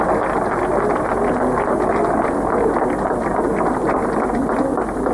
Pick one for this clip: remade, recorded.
recorded